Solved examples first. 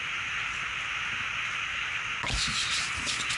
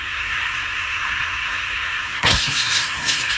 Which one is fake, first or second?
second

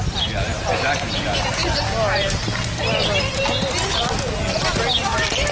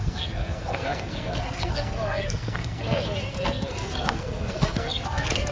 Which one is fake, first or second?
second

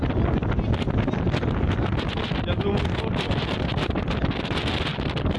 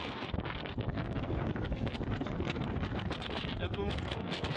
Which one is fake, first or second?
second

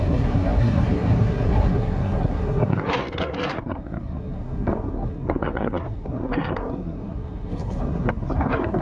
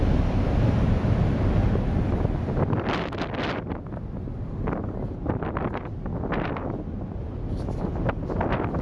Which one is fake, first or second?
first